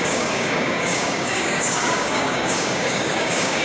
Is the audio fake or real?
fake